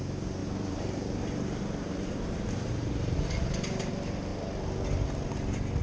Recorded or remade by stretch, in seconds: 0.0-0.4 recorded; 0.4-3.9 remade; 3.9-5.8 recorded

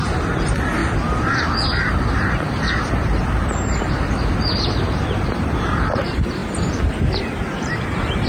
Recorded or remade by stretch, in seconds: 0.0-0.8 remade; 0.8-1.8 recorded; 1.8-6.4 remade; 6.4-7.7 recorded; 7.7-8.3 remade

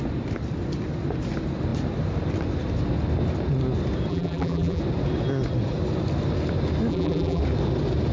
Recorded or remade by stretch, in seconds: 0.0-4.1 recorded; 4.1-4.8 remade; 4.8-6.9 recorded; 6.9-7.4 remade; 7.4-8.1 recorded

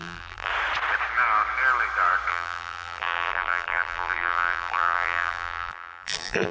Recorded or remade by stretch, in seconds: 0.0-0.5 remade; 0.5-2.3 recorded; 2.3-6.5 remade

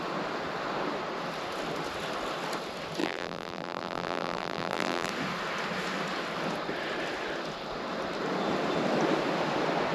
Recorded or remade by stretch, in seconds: 0.0-3.0 recorded; 3.0-5.1 remade; 5.1-9.9 recorded